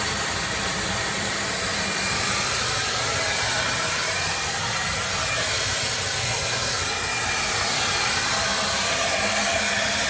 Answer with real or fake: real